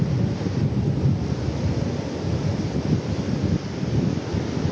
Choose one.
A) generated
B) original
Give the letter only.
B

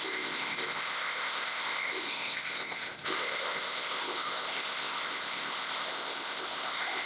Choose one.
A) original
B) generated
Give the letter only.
B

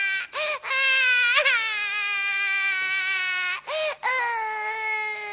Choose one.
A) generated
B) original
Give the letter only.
B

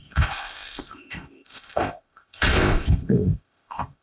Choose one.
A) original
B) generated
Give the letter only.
B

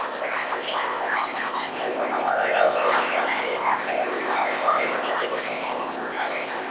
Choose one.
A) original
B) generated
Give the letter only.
B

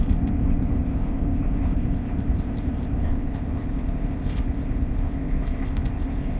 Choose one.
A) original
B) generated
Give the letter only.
B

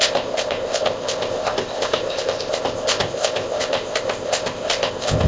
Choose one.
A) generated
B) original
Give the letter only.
A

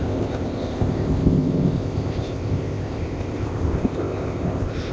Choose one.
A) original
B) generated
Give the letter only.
B